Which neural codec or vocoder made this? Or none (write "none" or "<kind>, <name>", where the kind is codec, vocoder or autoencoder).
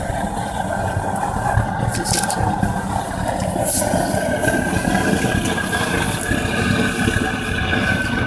none